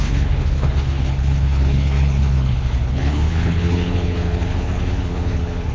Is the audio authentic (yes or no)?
no